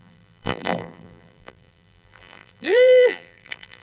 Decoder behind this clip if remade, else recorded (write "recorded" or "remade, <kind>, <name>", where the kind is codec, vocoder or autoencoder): remade, vocoder, BigVGAN v2